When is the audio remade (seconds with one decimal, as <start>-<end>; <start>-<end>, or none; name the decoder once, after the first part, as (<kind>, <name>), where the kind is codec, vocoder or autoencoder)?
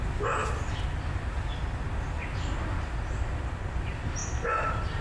none